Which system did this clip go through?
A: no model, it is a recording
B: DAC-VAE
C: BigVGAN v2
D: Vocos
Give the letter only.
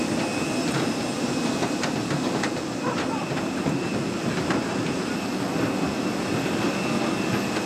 A